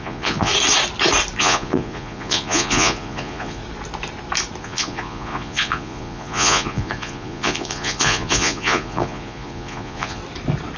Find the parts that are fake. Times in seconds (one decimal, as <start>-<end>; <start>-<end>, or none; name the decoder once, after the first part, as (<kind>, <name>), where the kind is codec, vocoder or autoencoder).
0.0-0.5 (vocoder, Vocos); 1.4-3.6; 4.6-10.2